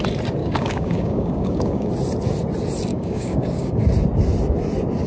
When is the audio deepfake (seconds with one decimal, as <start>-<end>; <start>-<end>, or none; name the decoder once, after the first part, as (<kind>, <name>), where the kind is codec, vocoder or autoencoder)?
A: 0.4-1.9 (codec, DAC); 2.9-3.8